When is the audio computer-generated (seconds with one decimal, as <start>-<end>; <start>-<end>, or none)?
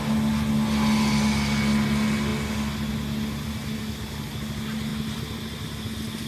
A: 4.9-5.6